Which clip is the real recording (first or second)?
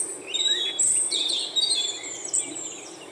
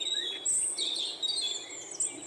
second